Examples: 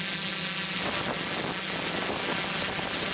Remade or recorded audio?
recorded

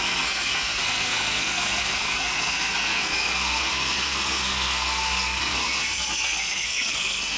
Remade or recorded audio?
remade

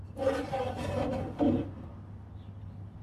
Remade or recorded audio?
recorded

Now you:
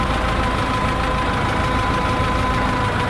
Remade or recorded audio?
recorded